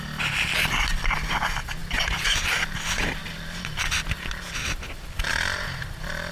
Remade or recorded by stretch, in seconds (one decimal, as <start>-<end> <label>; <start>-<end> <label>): 0.0-6.3 recorded